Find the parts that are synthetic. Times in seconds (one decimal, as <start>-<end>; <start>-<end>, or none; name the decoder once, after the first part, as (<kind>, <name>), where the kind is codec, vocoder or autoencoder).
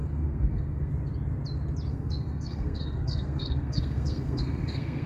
0.0-0.9 (codec, SNAC); 1.9-5.1